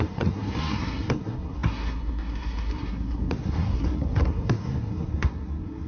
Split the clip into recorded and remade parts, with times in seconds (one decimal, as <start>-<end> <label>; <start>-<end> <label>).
0.0-5.9 remade